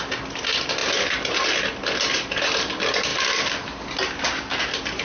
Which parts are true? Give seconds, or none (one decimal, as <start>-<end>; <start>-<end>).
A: 0.0-3.1; 4.0-5.0